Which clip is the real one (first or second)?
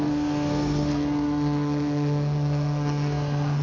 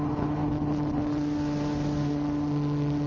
second